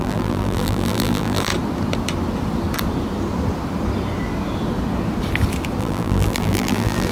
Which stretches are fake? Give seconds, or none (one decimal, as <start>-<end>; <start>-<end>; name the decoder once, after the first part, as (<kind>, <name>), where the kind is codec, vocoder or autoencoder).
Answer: 0.0-1.5 (vocoder, BigVGAN v2); 5.8-7.1